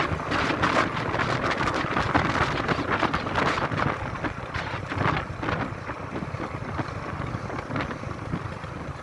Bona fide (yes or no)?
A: yes